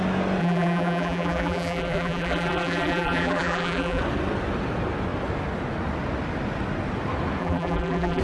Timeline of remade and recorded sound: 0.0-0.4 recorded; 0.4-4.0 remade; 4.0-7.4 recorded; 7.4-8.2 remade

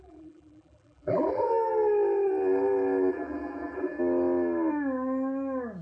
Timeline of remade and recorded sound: 0.0-1.5 remade; 1.5-3.1 recorded; 3.1-4.0 remade; 4.0-5.8 recorded